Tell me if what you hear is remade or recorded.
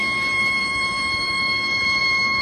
remade